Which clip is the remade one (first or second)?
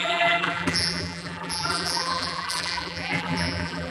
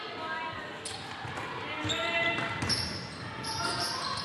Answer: first